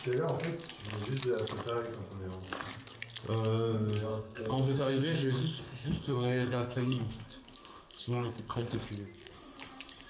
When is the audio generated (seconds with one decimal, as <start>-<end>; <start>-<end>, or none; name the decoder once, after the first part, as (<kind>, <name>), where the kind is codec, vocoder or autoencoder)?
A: 4.1-8.9 (codec, SNAC)